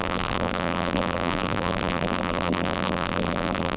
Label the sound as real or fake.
fake